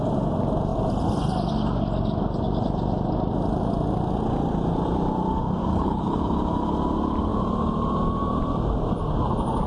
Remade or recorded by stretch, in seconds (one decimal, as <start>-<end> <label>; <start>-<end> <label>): 0.0-5.7 recorded; 5.7-6.2 remade; 6.2-9.7 recorded